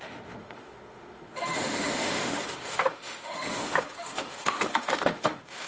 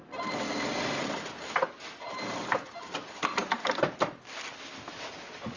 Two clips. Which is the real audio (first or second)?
second